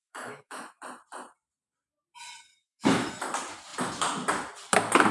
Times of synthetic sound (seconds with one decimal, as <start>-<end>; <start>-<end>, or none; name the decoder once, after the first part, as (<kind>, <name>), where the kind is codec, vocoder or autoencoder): 0.0-0.8 (autoencoder, DAC-VAE); 2.5-3.1